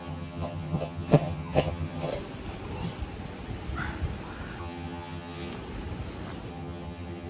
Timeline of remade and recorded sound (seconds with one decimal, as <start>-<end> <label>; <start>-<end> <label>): 0.0-2.1 remade; 2.1-4.6 recorded; 4.6-5.5 remade; 5.5-6.5 recorded; 6.5-7.3 remade